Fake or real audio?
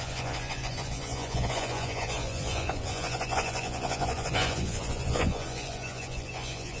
fake